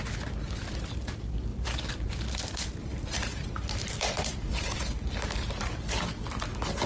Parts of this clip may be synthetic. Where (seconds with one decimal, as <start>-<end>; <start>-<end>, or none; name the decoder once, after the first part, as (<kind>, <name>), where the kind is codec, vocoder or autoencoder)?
1.5-2.1 (vocoder, BigVGAN v2); 2.8-5.8